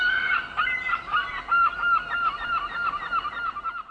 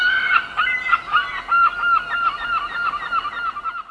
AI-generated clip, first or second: first